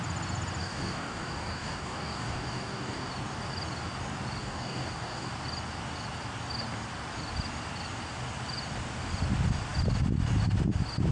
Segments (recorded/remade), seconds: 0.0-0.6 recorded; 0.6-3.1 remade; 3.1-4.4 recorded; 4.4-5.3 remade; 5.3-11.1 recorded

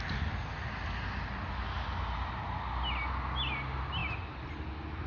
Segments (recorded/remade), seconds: 0.0-5.1 recorded

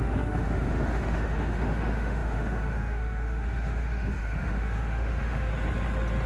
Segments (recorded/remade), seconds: 0.0-5.5 remade; 5.5-6.3 recorded

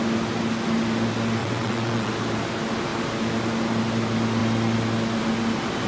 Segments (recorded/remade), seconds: 0.0-1.4 recorded; 1.4-2.1 remade; 2.1-5.9 recorded

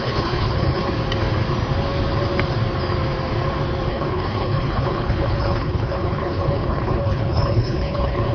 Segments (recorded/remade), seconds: 0.0-0.8 remade; 0.8-3.9 recorded; 3.9-8.3 remade

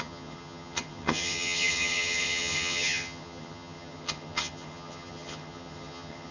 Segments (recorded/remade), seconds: 0.0-6.3 remade